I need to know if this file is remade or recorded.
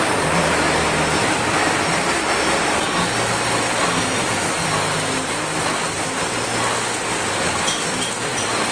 recorded